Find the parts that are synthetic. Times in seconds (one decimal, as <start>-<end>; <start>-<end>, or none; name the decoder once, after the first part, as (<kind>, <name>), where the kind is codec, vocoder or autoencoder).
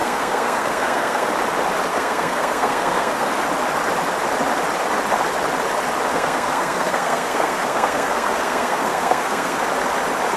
0.0-1.3 (codec, SNAC); 1.9-3.3; 6.1-9.6